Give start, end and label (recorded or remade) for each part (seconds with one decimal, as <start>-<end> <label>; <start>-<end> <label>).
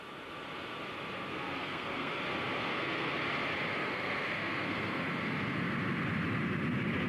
0.0-1.3 recorded; 1.3-2.2 remade; 2.2-2.7 recorded; 2.7-3.2 remade; 3.2-3.8 recorded; 3.8-5.1 remade; 5.1-7.1 recorded